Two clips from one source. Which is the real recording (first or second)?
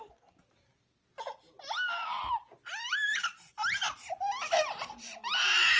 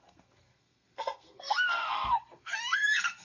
first